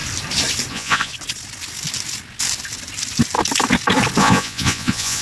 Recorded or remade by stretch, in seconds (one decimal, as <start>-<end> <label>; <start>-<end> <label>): 0.0-0.7 recorded; 0.7-1.1 remade; 1.1-4.2 recorded; 4.2-5.2 remade